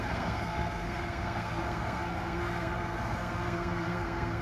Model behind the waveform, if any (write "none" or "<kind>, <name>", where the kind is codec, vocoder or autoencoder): codec, SNAC